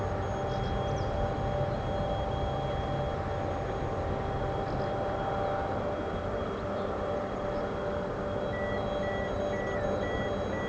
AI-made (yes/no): no